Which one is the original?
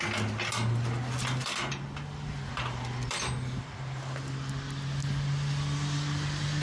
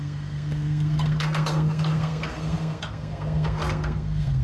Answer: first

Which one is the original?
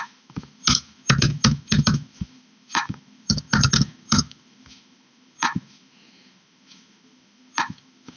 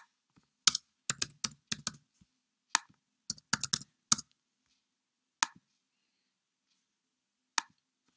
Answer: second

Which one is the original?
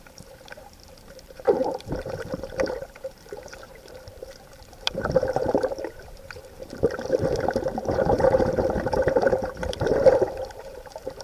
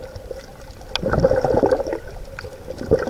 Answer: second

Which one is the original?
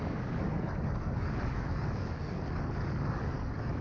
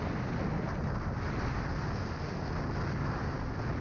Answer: second